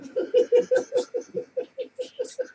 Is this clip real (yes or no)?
yes